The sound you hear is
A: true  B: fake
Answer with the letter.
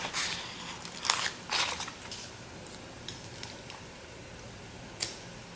A